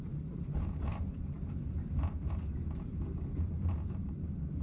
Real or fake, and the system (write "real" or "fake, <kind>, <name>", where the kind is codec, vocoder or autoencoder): fake, vocoder, BigVGAN v2